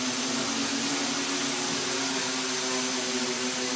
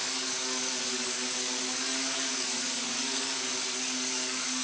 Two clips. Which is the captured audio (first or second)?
first